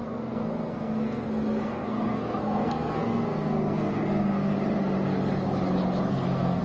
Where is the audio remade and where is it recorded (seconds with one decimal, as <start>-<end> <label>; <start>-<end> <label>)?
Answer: 0.0-4.5 remade; 4.5-6.1 recorded; 6.1-6.6 remade